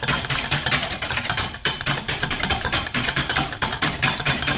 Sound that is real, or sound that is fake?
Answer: fake